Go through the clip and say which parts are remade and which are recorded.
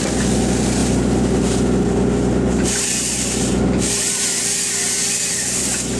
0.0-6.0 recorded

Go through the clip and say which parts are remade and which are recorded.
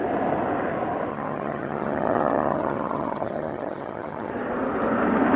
0.0-1.1 recorded; 1.1-4.3 remade; 4.3-5.4 recorded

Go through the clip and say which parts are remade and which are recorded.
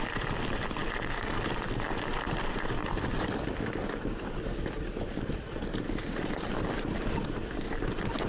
0.0-2.8 recorded; 2.8-6.5 remade; 6.5-8.3 recorded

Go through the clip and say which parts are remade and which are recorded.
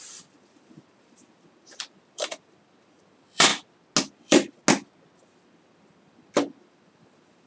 0.0-3.5 remade; 3.5-4.1 recorded; 4.1-4.6 remade; 4.6-5.2 recorded; 5.2-7.5 remade